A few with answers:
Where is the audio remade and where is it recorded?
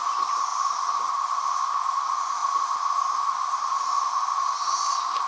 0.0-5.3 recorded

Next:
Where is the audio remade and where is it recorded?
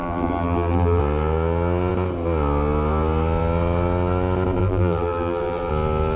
0.0-1.0 remade; 1.0-4.6 recorded; 4.6-5.7 remade; 5.7-6.2 recorded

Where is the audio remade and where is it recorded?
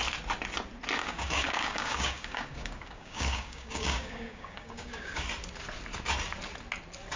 0.0-1.0 recorded; 1.0-5.2 remade; 5.2-7.2 recorded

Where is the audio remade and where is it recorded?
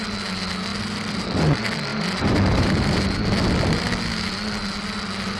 0.0-0.7 recorded; 0.7-1.4 remade; 1.4-1.9 recorded; 1.9-3.0 remade; 3.0-5.4 recorded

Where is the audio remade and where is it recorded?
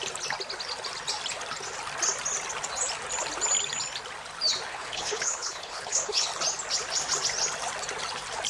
0.0-4.7 recorded; 4.7-6.3 remade; 6.3-8.5 recorded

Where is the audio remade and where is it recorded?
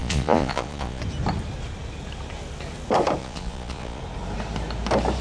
0.0-1.0 remade; 1.0-3.2 recorded; 3.2-4.0 remade; 4.0-5.2 recorded